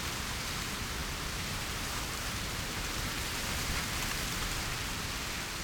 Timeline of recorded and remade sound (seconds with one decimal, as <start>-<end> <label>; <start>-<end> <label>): 0.0-1.0 recorded; 1.0-3.8 remade; 3.8-5.6 recorded